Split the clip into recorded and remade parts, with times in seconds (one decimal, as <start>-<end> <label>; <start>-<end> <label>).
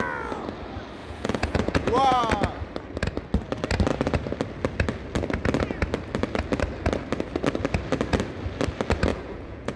0.0-1.0 recorded; 1.0-2.2 remade; 2.2-9.1 recorded; 9.1-9.8 remade